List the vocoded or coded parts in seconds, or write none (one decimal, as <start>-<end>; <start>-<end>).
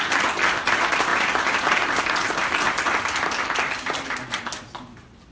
none